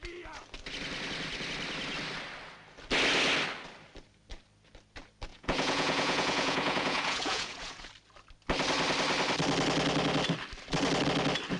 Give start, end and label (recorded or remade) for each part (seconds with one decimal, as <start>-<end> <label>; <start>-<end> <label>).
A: 0.0-5.3 recorded; 5.3-7.9 remade; 7.9-11.6 recorded